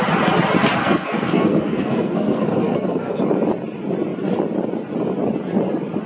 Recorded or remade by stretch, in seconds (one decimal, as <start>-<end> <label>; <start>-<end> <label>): 0.0-0.8 recorded; 0.8-3.2 remade; 3.2-6.1 recorded